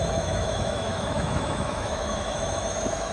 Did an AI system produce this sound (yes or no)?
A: yes